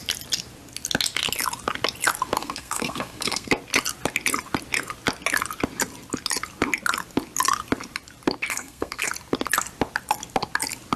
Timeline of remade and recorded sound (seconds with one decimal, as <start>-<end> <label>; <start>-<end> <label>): 0.0-2.4 recorded; 2.4-3.5 remade; 3.5-8.5 recorded; 8.5-9.1 remade; 9.1-11.0 recorded